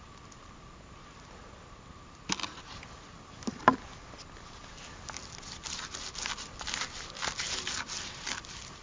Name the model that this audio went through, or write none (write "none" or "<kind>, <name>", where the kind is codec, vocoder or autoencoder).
none